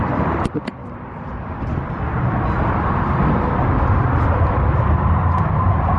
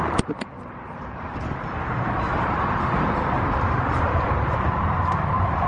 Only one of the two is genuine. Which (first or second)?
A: first